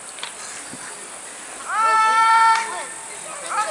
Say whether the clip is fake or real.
real